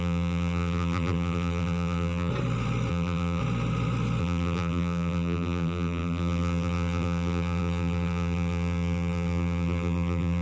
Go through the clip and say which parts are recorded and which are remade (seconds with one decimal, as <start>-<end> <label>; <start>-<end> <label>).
0.0-2.3 remade; 2.3-2.9 recorded; 2.9-3.4 remade; 3.4-4.2 recorded; 4.2-10.4 remade